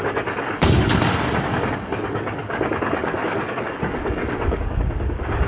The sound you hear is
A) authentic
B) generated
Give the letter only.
B